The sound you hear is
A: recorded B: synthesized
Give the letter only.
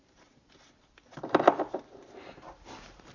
A